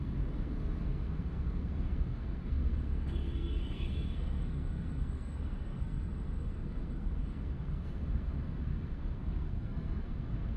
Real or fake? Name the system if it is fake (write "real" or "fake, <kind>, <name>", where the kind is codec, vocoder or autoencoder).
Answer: fake, codec, SNAC